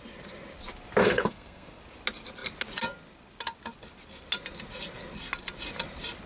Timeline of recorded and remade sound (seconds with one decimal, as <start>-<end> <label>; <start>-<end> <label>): 0.0-1.0 recorded; 1.0-1.8 remade; 1.8-6.3 recorded